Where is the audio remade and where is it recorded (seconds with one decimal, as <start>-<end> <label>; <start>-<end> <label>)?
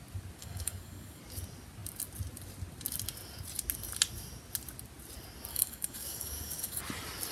0.0-0.4 recorded; 0.4-1.2 remade; 1.2-5.5 recorded; 5.5-6.8 remade; 6.8-7.3 recorded